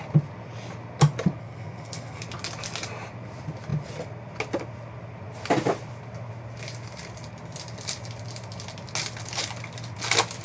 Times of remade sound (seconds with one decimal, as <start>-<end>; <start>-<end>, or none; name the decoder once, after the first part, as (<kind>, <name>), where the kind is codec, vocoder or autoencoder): 1.4-2.2 (codec, SNAC)